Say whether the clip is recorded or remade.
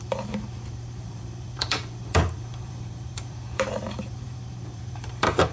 remade